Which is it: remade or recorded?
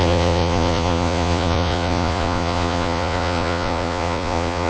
remade